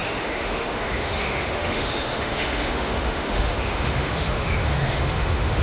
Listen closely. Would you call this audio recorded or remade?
remade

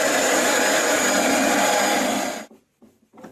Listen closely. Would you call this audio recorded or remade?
recorded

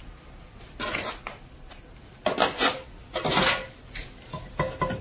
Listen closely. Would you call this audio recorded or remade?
recorded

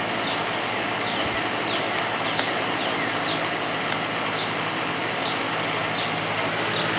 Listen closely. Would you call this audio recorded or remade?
recorded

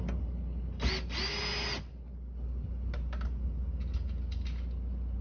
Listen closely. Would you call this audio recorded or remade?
recorded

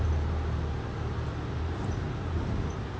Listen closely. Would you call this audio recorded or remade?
recorded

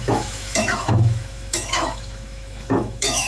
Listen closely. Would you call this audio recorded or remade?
remade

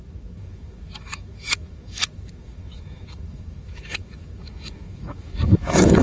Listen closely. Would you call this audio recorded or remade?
remade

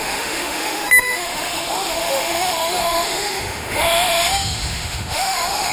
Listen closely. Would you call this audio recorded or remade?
remade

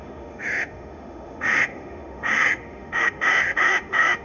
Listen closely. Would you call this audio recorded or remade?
remade